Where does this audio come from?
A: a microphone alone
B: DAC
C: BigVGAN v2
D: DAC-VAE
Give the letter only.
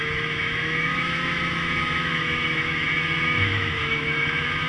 D